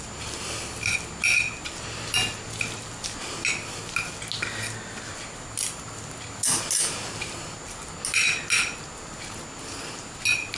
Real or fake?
real